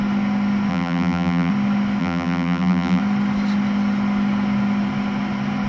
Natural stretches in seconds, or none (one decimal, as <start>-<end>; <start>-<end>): 0.0-0.7; 1.5-2.0; 3.0-5.7